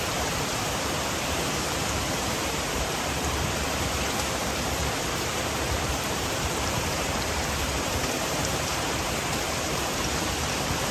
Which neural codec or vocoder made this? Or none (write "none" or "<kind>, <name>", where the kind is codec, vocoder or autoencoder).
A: vocoder, BigVGAN v2